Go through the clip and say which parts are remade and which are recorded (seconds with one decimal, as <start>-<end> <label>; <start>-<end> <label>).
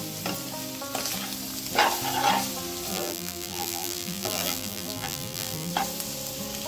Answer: 0.0-2.9 recorded; 2.9-5.7 remade; 5.7-6.7 recorded